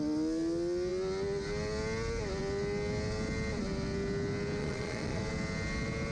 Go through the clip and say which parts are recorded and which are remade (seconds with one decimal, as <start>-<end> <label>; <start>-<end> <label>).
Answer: 0.0-4.6 recorded; 4.6-5.2 remade; 5.2-6.1 recorded